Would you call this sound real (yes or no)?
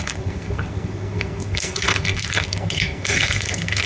no